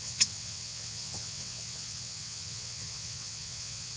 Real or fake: fake